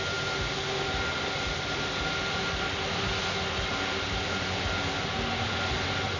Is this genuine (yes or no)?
yes